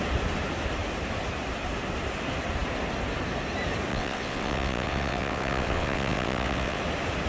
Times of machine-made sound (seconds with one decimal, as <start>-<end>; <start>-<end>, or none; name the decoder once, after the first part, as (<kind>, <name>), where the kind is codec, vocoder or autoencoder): 3.9-6.8 (vocoder, WaveNeXt)